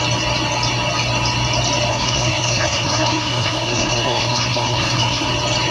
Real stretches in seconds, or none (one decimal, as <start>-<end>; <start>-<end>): 0.0-1.9; 5.3-5.7

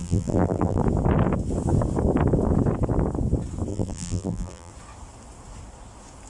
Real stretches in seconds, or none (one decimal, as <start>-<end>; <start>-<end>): 0.8-3.7; 4.7-6.3

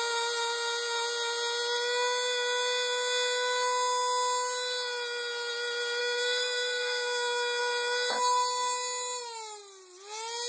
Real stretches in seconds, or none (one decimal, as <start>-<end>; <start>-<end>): 0.0-6.0; 7.6-10.5

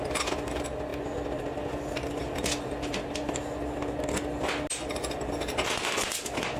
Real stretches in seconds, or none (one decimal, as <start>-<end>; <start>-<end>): 0.0-6.6

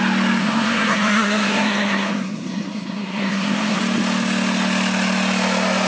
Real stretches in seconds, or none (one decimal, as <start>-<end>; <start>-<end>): 0.0-0.4; 3.8-5.9

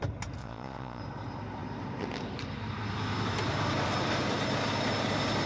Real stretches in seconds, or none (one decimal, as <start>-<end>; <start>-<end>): 0.0-0.4; 1.0-5.5